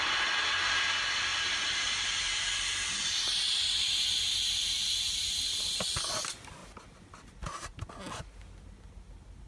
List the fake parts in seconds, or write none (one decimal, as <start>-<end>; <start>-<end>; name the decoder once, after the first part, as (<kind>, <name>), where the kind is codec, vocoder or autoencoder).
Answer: none